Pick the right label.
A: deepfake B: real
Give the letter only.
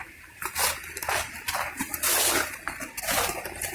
B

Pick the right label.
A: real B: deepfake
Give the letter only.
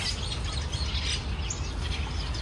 A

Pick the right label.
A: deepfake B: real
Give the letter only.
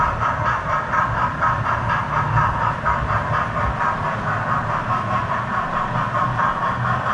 B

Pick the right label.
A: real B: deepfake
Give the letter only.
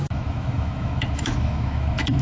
B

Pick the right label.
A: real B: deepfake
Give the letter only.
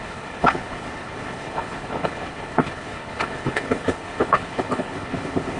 B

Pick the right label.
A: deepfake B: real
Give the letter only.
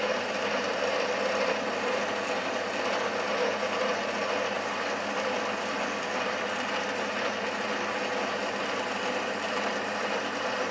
B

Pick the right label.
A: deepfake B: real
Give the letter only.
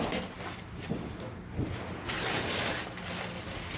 B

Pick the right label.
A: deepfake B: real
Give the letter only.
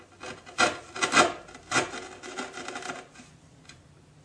B